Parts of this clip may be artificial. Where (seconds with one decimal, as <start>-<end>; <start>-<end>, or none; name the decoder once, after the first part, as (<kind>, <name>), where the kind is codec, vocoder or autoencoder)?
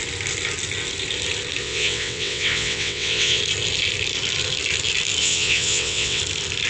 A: 1.6-3.4 (vocoder, WaveNeXt); 5.2-6.2